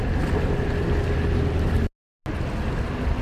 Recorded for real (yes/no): yes